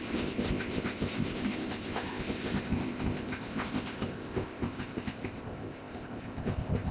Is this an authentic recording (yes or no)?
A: no